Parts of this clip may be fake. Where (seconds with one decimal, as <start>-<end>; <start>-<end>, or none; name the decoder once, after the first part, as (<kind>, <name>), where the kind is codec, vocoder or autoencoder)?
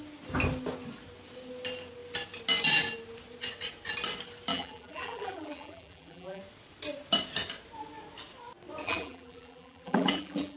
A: 4.5-6.4 (vocoder, BigVGAN v2); 8.8-10.6